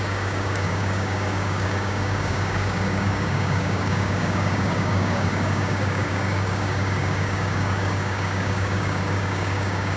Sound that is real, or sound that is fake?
fake